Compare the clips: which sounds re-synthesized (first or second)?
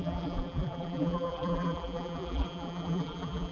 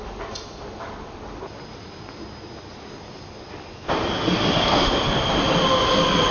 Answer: first